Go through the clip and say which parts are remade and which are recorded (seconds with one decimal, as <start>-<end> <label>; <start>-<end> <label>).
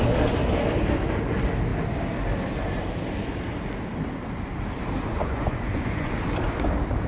0.0-5.1 recorded; 5.1-6.1 remade; 6.1-7.1 recorded